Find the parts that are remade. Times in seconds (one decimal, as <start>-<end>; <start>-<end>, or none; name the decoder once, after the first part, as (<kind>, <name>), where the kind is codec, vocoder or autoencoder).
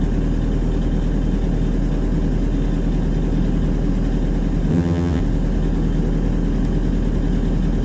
4.7-5.2 (vocoder, HiFi-GAN)